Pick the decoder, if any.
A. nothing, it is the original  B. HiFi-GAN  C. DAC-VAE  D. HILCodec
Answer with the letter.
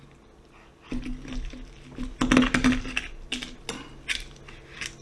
A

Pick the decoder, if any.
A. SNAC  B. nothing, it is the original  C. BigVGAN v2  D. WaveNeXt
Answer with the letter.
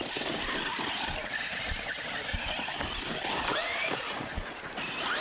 B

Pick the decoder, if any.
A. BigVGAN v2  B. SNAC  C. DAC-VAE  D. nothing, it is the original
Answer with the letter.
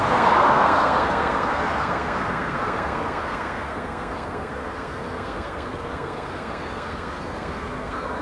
B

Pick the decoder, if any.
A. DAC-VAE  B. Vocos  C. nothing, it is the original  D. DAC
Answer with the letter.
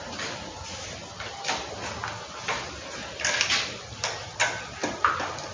C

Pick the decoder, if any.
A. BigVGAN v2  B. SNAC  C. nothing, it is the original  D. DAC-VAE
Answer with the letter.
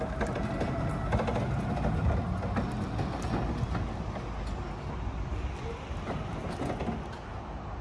C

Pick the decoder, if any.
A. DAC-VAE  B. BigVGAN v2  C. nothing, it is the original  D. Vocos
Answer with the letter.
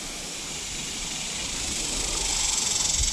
C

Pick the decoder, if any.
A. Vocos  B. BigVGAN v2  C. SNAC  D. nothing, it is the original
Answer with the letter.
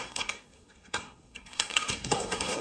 C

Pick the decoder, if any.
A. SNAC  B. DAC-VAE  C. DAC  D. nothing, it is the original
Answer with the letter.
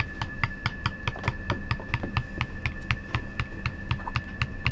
D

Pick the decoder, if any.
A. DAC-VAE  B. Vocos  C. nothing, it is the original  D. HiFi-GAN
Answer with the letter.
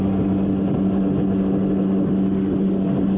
C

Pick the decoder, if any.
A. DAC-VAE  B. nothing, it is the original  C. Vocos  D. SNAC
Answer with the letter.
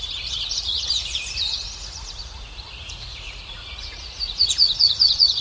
C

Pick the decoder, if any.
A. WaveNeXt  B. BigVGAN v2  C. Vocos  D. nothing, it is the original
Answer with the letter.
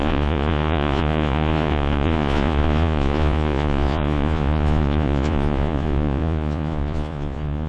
C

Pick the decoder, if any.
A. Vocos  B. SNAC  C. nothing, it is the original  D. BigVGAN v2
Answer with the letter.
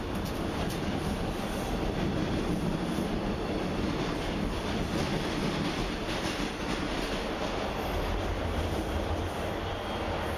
C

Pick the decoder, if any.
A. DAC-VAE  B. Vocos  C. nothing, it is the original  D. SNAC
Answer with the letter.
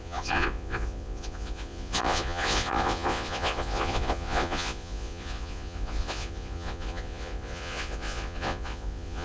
B